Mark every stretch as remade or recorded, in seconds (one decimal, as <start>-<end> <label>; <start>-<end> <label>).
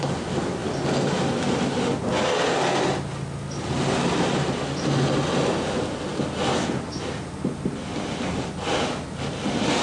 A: 0.0-9.8 recorded